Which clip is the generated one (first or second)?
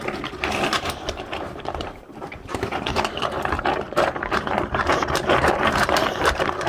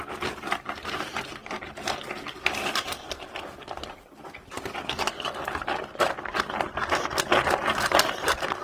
first